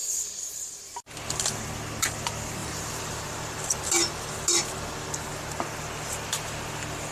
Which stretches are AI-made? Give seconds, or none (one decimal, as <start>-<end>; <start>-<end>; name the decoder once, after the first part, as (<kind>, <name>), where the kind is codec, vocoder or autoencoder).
0.0-0.8 (vocoder, BigVGAN v2); 2.6-3.8